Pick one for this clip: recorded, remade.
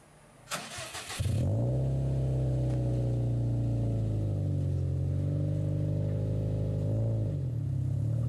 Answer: recorded